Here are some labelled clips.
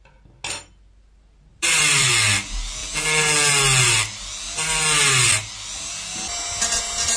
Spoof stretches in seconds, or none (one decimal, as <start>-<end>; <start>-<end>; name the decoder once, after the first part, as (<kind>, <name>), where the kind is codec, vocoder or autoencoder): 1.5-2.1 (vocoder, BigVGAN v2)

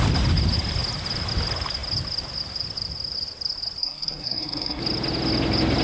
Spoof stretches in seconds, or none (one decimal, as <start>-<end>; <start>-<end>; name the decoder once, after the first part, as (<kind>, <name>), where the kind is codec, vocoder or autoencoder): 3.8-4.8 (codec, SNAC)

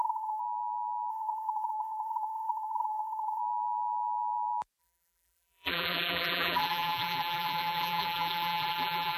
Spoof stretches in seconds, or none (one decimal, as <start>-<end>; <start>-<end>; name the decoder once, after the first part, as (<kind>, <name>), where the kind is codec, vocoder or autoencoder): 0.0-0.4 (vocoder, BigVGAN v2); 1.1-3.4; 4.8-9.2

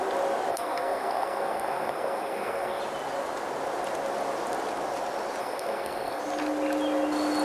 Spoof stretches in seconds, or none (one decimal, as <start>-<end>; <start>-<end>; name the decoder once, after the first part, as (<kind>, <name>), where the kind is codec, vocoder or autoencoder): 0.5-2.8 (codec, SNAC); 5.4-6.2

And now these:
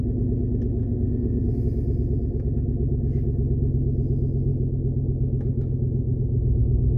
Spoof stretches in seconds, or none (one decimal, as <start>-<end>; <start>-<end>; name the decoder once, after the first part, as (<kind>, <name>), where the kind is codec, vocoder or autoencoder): 0.8-1.6 (codec, SNAC)